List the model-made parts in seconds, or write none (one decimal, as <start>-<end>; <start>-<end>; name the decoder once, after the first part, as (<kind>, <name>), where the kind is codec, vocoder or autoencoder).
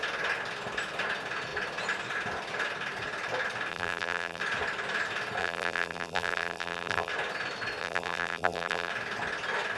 3.7-4.4 (vocoder, BigVGAN v2); 5.4-7.1; 7.8-8.9